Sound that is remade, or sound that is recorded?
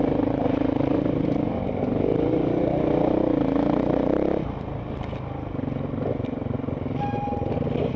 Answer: recorded